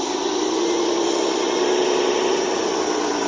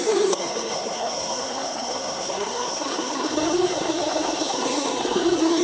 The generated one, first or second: second